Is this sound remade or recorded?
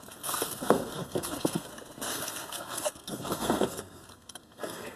remade